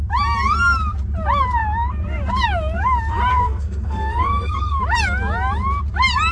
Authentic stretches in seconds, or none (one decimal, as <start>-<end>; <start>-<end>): 0.0-3.3; 4.8-6.3